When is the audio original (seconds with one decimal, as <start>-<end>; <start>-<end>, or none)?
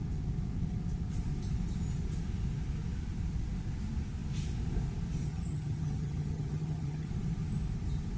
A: 0.0-5.2; 7.1-8.2